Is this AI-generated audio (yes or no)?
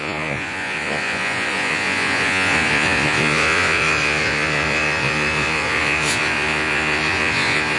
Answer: yes